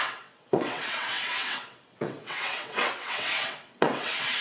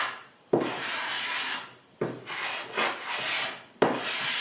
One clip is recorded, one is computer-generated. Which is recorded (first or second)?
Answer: second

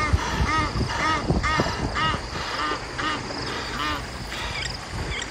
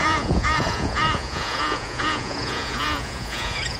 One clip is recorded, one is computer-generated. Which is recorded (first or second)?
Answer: first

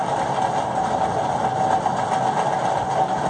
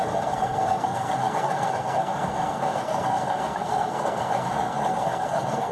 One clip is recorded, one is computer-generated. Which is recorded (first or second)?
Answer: first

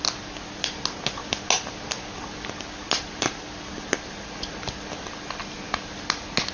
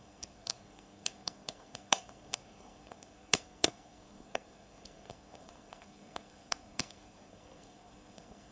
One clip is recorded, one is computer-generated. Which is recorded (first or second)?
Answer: first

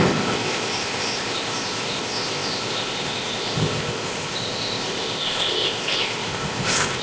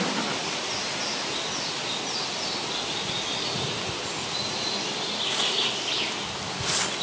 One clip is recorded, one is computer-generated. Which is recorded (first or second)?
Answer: second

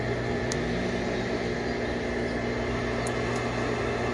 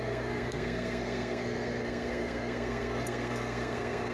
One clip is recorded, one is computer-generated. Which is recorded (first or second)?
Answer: first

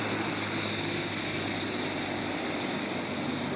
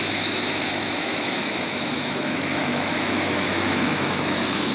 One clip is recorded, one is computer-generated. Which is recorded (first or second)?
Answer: first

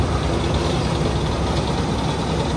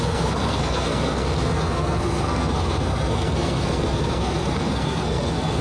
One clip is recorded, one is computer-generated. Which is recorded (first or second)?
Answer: first